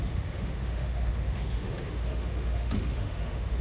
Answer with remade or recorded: remade